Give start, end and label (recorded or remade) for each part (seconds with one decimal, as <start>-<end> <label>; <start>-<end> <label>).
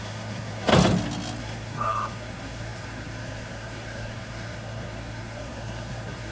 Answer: 0.0-0.7 remade; 0.7-1.4 recorded; 1.4-6.3 remade